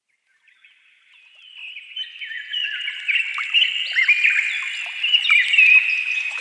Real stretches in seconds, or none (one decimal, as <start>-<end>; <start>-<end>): 1.6-5.3